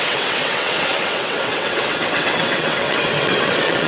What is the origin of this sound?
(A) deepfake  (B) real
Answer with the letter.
A